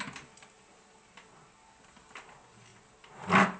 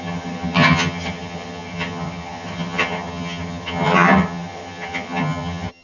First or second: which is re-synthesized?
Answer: second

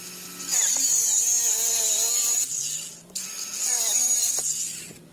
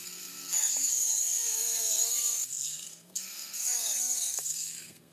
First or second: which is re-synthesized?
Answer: second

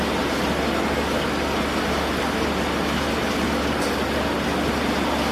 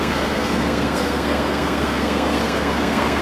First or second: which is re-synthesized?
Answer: second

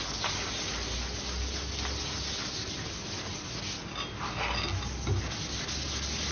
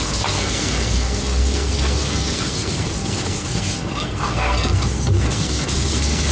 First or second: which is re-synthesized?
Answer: second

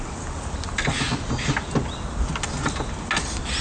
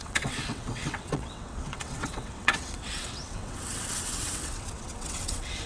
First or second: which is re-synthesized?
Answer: second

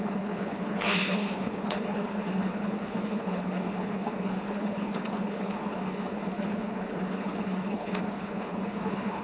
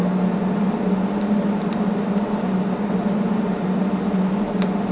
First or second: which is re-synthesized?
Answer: first